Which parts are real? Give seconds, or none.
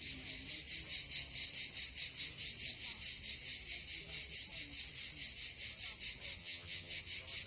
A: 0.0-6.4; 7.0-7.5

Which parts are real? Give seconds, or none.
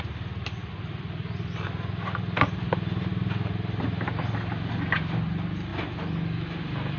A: 0.0-7.0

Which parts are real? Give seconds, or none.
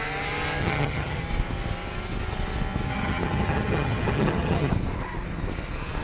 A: 0.0-0.6; 1.2-2.9; 4.7-6.0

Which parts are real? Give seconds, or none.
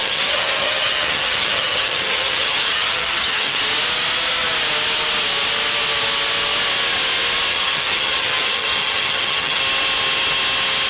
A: 3.6-7.5; 9.6-10.9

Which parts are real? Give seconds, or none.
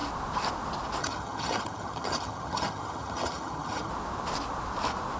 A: 0.0-1.0; 3.9-5.2